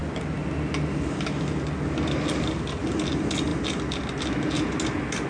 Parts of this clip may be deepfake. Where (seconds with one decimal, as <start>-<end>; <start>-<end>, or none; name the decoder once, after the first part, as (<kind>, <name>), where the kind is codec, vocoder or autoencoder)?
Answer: none